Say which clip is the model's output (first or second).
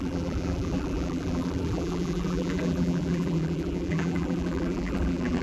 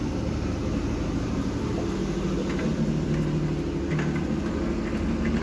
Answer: first